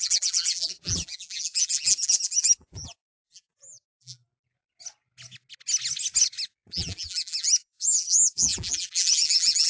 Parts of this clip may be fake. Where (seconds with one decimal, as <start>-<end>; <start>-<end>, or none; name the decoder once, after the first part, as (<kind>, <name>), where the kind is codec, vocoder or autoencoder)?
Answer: 0.0-4.3 (vocoder, BigVGAN v2); 6.7-9.7